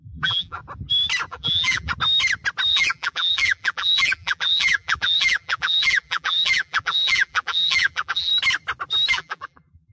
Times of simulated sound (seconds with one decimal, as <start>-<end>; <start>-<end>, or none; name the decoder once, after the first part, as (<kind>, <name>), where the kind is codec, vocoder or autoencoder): 0.0-0.6 (vocoder, BigVGAN v2); 1.3-1.9; 2.7-8.3; 9.1-9.9